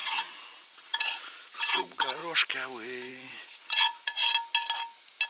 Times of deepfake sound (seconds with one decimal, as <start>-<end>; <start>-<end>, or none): 0.0-2.2; 3.1-4.2